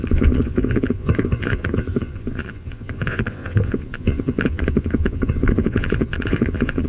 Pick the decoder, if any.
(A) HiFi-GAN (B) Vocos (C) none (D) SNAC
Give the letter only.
B